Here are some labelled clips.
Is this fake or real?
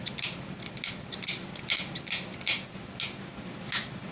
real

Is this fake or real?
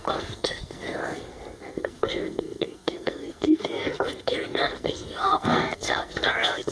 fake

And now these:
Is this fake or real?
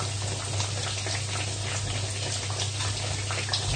real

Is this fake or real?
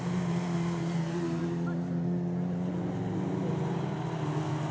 real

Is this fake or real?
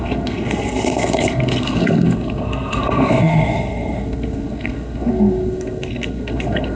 fake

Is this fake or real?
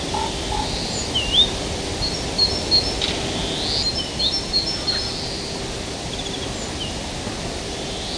real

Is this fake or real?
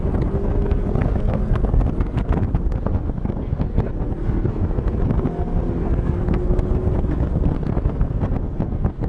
fake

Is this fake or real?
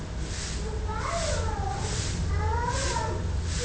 real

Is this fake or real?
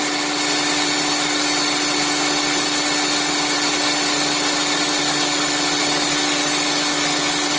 real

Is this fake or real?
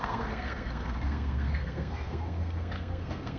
fake